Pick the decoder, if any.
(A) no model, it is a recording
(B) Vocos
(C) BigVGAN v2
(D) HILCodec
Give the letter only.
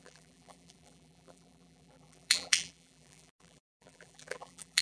C